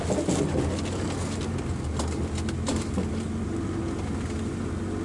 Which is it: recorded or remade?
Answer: recorded